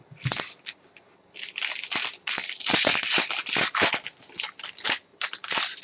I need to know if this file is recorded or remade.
recorded